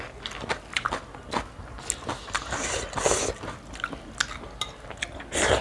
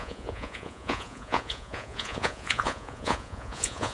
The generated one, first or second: second